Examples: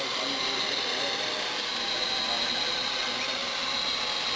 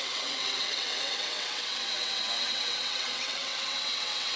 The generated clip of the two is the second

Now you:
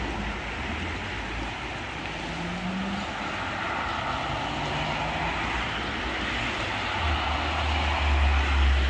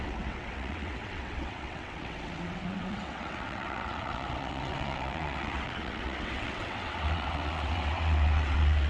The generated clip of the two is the second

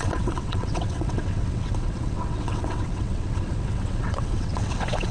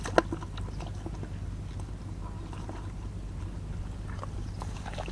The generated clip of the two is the first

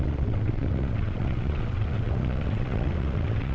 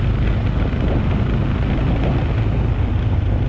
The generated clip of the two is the first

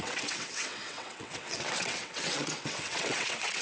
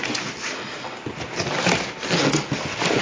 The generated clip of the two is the first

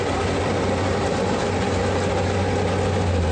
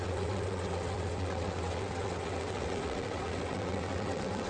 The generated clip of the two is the second